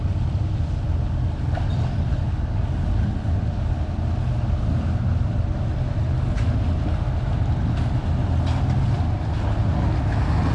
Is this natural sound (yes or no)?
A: yes